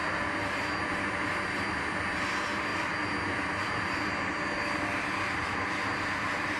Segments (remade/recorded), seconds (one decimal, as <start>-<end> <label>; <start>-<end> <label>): 0.0-6.6 recorded